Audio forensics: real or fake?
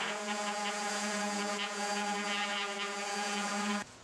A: fake